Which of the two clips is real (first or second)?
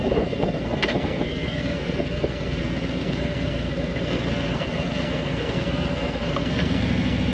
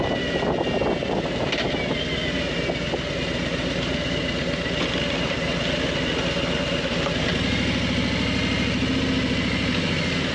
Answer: second